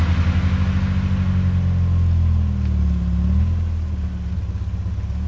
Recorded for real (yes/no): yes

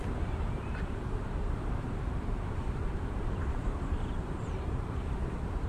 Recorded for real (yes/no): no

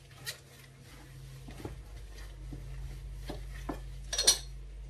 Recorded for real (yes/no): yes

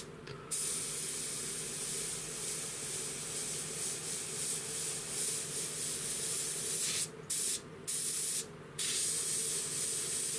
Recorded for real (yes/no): yes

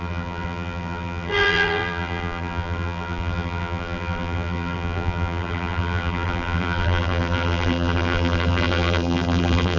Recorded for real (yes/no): no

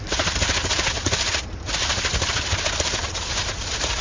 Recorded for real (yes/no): no